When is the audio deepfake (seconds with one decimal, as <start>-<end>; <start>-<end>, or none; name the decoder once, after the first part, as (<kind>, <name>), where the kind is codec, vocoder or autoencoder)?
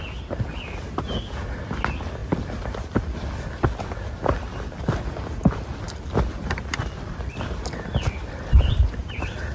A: 2.2-5.0 (vocoder, BigVGAN v2); 5.7-8.8